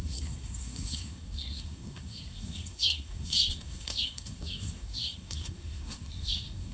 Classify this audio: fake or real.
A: fake